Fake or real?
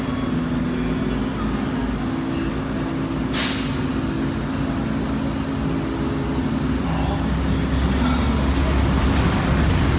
real